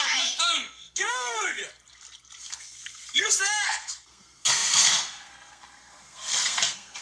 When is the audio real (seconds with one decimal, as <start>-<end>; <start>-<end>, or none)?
1.6-2.4